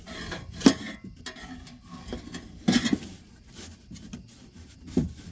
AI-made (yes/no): no